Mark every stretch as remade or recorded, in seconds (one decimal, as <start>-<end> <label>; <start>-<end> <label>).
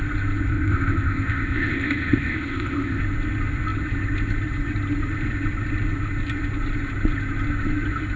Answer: 0.0-0.5 recorded; 0.5-3.0 remade; 3.0-8.2 recorded